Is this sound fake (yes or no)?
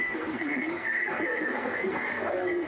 yes